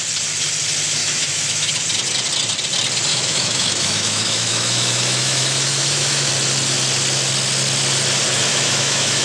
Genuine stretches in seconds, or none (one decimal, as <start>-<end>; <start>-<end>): 0.0-1.0; 1.7-3.1; 6.3-8.5